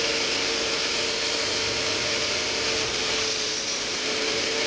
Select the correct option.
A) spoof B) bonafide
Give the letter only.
B